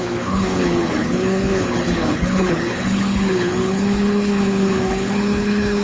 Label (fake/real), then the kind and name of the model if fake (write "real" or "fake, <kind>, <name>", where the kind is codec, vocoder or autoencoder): fake, codec, HILCodec